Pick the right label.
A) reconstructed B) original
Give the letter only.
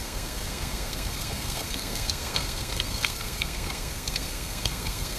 A